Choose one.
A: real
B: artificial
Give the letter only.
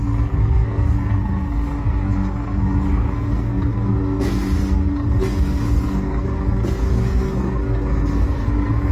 B